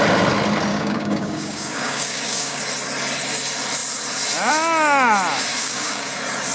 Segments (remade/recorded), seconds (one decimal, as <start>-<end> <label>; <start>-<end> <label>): 0.0-0.7 recorded; 0.7-2.6 remade; 2.6-5.5 recorded; 5.5-6.1 remade; 6.1-6.5 recorded